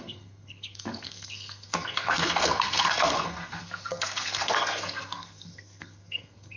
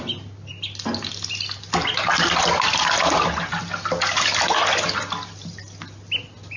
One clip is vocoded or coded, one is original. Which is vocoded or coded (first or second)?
first